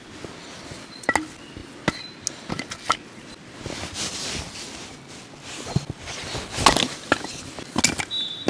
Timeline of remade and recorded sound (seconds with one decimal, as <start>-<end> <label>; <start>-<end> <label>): 0.0-8.5 recorded